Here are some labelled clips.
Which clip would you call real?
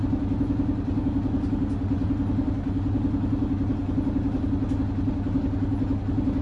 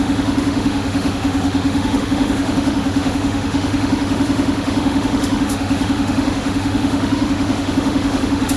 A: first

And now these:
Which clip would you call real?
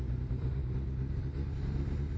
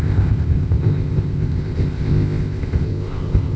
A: first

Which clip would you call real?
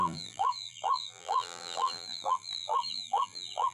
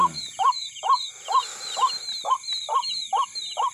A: second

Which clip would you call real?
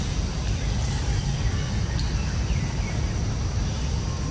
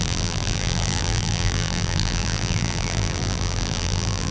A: first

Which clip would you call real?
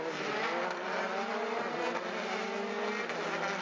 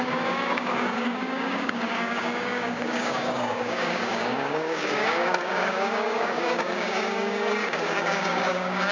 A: first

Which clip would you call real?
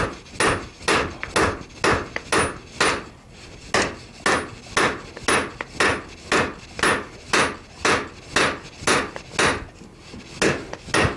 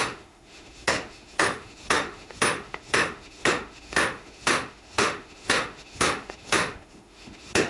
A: first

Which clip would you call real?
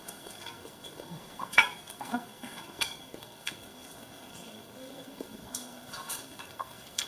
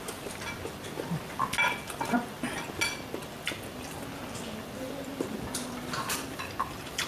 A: second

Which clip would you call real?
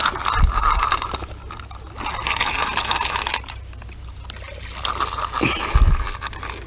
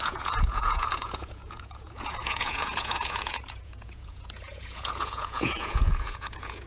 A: first